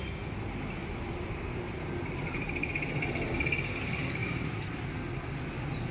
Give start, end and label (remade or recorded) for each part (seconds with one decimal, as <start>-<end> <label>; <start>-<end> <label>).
0.0-0.8 recorded; 0.8-2.7 remade; 2.7-4.2 recorded; 4.2-4.9 remade; 4.9-5.9 recorded